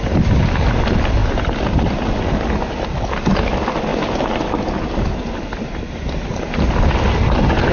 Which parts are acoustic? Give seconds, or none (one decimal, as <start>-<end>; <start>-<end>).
0.0-7.7